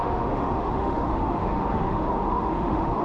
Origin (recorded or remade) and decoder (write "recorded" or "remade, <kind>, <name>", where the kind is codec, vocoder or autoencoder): remade, autoencoder, DAC-VAE